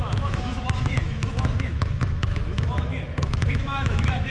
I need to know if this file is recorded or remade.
remade